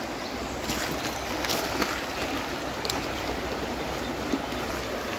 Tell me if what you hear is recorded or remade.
recorded